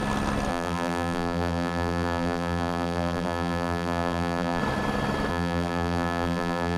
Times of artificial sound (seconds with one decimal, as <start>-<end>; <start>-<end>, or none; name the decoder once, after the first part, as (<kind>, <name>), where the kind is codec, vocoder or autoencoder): 0.5-4.6 (vocoder, BigVGAN v2); 5.3-6.8